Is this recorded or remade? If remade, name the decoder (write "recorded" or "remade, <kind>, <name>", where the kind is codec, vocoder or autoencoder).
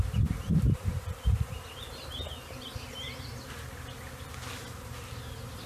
recorded